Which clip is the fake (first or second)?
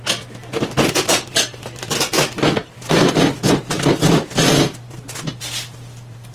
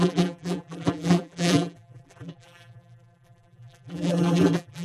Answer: second